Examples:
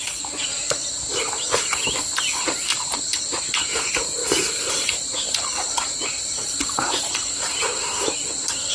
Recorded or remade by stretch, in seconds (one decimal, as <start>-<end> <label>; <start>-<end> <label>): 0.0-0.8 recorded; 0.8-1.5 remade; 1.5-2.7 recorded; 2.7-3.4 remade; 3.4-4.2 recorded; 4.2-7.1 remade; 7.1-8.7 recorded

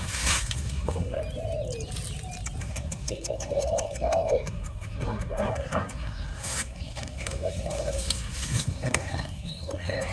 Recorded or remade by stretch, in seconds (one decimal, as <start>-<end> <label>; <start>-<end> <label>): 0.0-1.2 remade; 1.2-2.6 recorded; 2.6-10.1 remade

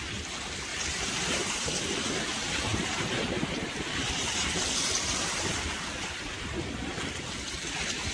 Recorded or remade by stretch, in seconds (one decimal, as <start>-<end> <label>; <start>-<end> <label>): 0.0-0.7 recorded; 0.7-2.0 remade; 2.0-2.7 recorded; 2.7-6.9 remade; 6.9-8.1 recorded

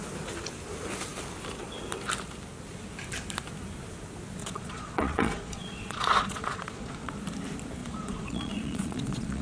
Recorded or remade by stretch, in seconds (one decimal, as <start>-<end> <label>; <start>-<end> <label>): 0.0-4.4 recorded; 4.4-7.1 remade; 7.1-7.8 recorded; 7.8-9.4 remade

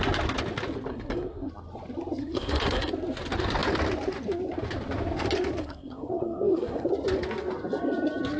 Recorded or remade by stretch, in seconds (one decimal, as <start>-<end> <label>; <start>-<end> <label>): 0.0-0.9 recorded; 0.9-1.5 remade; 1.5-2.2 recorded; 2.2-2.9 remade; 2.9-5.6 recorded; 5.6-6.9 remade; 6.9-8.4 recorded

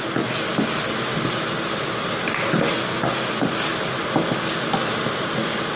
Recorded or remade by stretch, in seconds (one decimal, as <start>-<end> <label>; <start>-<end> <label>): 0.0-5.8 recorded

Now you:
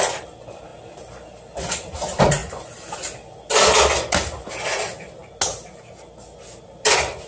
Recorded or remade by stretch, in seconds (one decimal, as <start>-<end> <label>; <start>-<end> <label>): 0.0-7.3 recorded

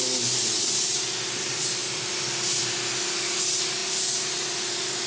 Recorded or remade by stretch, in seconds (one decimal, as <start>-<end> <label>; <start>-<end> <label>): 0.0-5.1 recorded